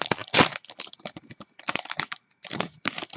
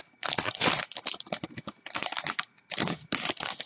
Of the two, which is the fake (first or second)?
first